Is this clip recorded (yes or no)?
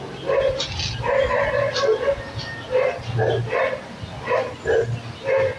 yes